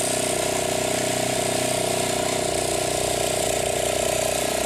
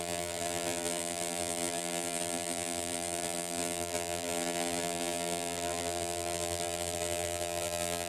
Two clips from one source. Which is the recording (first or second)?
first